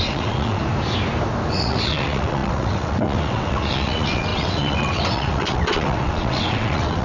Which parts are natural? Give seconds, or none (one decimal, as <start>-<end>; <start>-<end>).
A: 0.6-1.5

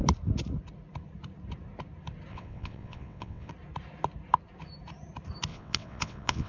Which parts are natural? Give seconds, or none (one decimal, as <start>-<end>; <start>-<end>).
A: 0.0-2.3; 3.5-5.5

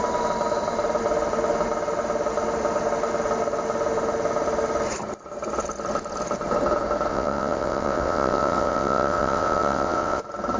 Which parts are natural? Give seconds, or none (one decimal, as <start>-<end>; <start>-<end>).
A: 0.0-7.1; 10.2-10.6